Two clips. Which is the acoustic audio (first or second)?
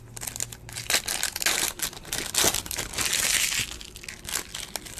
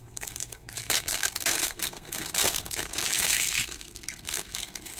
first